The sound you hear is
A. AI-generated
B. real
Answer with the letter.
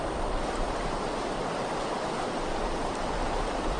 B